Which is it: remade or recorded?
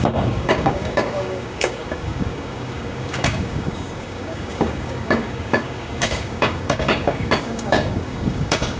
remade